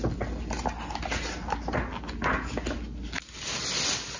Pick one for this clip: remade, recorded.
recorded